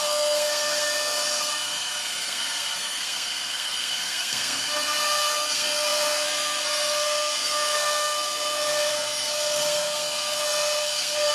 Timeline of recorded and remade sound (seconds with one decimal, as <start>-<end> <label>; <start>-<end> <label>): 0.0-11.3 remade